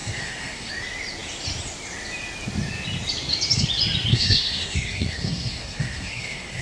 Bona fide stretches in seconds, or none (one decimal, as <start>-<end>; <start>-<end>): 0.7-4.1